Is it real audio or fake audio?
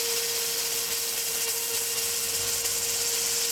real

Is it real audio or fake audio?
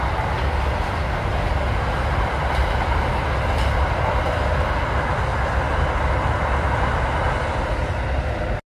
real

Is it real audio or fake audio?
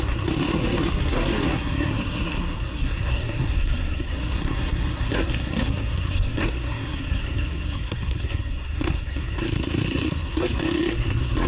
fake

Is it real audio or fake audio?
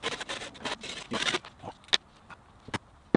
real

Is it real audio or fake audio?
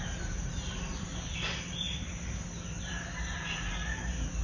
fake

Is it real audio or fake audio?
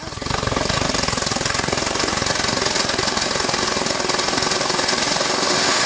real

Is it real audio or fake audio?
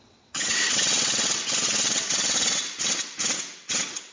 fake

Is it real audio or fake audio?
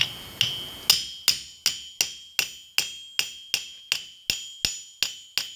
real